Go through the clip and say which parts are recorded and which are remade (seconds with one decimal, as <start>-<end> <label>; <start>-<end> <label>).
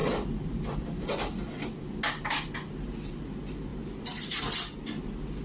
0.0-3.7 recorded; 3.7-4.4 remade; 4.4-5.4 recorded